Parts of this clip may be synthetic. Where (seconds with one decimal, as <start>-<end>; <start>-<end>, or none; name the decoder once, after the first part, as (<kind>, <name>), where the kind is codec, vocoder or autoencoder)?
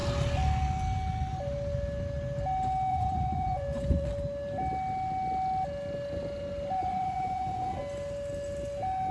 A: 2.9-4.1 (vocoder, Vocos); 6.8-7.8